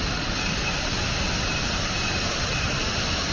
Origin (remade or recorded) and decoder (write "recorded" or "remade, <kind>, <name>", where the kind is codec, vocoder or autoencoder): recorded